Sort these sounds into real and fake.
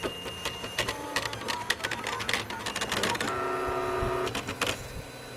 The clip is real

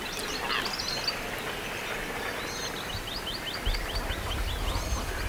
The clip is real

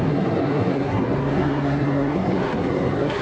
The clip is fake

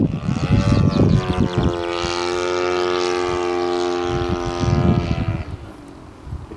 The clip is real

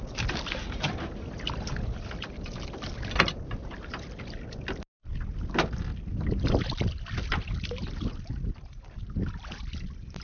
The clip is real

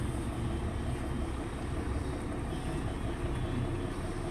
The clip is real